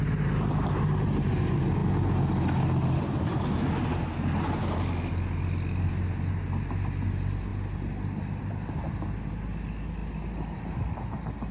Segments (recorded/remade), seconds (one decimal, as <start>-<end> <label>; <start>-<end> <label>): 0.0-11.5 recorded